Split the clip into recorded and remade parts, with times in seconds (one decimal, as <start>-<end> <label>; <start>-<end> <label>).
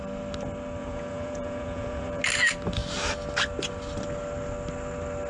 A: 0.0-0.8 recorded; 0.8-2.2 remade; 2.2-5.3 recorded